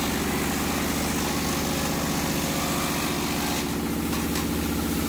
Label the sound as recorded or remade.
recorded